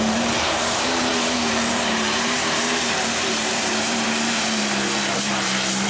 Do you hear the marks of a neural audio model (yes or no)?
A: yes